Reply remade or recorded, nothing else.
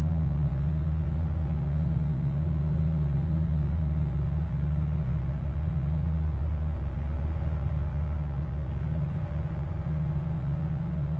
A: remade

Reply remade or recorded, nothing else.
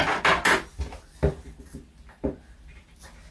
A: recorded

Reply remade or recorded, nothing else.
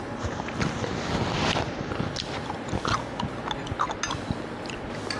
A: recorded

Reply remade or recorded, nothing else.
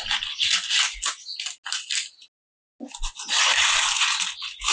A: recorded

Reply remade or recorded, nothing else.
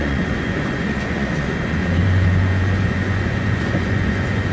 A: remade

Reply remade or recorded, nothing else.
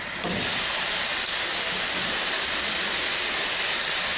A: recorded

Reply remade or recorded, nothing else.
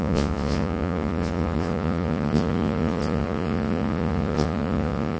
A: remade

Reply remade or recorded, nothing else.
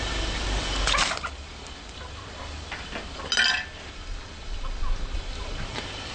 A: recorded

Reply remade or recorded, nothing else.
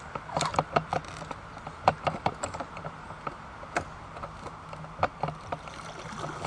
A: recorded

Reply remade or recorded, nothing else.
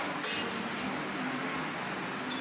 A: recorded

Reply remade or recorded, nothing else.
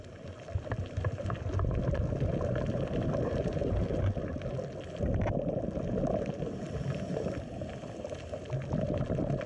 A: recorded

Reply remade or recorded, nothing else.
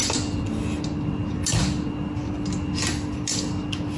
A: recorded